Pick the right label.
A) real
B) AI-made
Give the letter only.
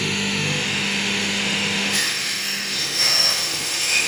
B